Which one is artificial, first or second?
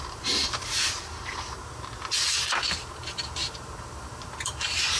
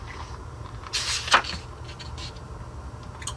first